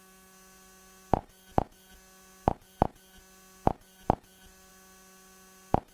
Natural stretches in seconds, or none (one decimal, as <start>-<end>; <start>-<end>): 0.0-5.9